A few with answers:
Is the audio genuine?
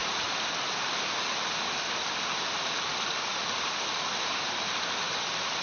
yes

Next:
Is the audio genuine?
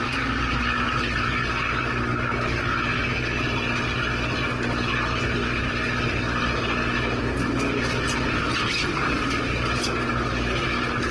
yes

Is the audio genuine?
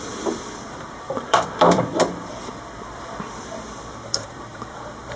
no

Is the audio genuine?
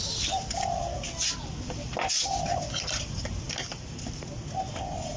yes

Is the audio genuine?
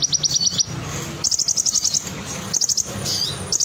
yes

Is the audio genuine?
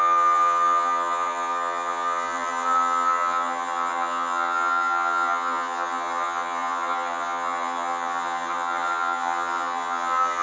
no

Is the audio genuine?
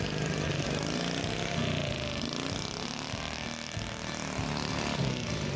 yes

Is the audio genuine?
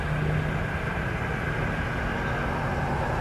yes